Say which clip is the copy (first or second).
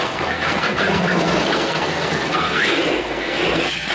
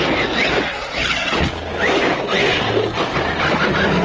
first